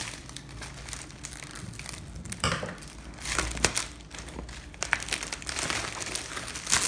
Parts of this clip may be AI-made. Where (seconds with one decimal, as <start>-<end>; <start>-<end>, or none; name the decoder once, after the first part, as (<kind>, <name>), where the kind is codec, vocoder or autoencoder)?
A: 1.5-5.6 (vocoder, BigVGAN v2)